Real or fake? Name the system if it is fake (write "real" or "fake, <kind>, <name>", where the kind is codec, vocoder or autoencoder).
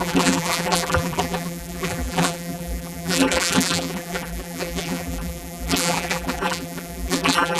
fake, vocoder, BigVGAN v2